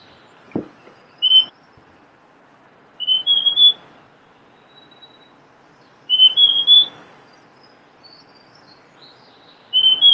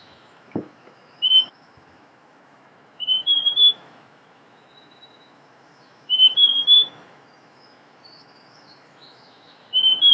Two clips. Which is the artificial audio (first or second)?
second